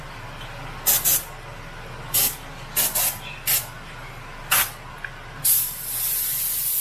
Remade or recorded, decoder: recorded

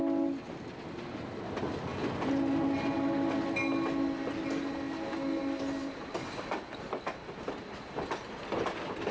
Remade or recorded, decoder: recorded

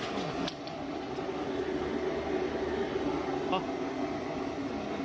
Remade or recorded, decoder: recorded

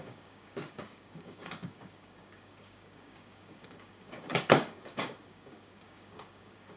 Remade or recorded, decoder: remade, codec, DAC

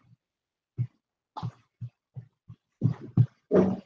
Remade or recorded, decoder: recorded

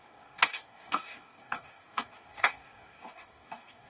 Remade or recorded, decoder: remade, codec, DAC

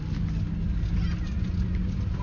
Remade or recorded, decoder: recorded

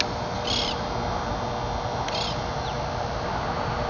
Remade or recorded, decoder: recorded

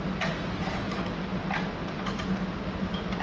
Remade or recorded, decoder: recorded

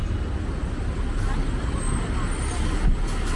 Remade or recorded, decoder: recorded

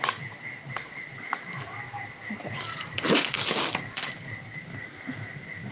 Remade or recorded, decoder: recorded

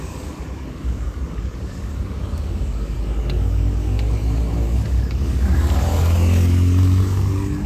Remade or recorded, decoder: remade, codec, DAC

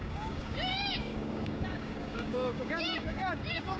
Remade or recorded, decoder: remade, codec, DAC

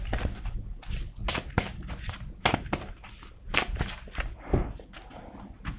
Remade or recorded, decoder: recorded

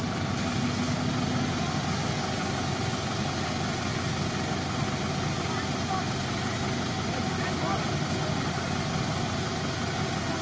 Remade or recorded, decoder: recorded